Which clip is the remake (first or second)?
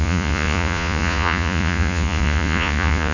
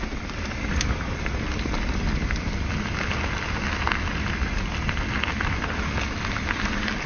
first